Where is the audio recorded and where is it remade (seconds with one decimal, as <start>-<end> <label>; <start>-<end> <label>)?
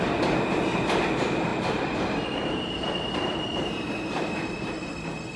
0.0-1.5 recorded; 1.5-4.7 remade; 4.7-5.4 recorded